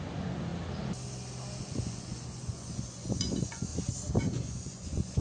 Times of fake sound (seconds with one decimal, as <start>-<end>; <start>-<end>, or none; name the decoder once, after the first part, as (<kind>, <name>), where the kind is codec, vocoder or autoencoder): 0.0-0.5 (vocoder, Vocos); 1.6-3.7; 4.2-5.2

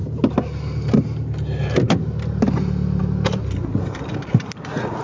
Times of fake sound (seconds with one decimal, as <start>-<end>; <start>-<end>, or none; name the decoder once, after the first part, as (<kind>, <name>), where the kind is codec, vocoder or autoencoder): none